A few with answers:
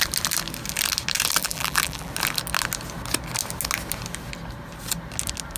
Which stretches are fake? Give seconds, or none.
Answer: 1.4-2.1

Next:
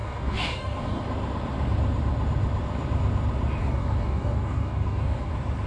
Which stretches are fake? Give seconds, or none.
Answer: 0.0-1.0; 3.6-5.3